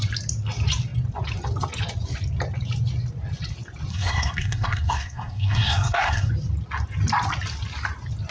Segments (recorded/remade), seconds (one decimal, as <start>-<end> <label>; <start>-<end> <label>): 0.0-3.9 recorded; 3.9-6.3 remade; 6.3-8.3 recorded